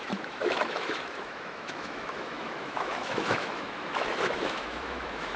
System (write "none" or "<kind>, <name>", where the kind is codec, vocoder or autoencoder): autoencoder, DAC-VAE